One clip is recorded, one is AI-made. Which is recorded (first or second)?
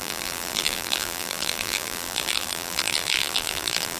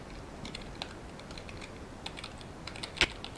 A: second